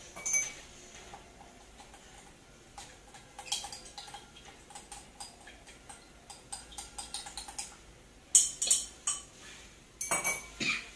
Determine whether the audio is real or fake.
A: real